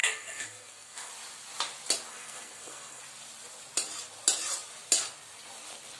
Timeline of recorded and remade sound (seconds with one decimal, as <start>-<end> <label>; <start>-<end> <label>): 0.0-1.1 remade; 1.1-2.1 recorded; 2.1-3.0 remade; 3.0-6.0 recorded